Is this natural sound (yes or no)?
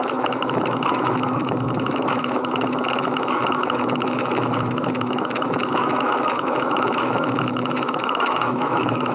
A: no